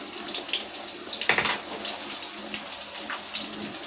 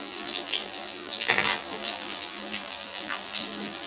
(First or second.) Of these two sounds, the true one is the first